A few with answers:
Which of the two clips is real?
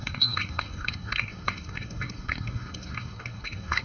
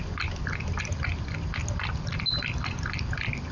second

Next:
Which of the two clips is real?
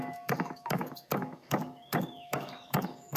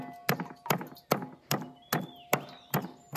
second